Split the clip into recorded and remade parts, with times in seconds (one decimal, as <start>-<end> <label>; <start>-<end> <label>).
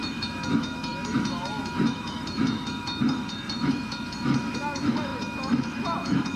0.0-6.4 remade